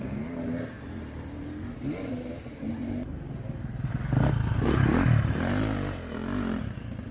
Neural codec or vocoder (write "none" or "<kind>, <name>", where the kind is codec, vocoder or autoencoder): none